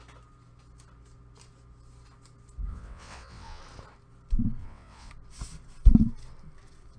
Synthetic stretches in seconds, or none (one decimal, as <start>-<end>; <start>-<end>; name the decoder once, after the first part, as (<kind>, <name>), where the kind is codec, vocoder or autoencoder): 2.7-3.6 (vocoder, WaveNeXt); 4.6-5.1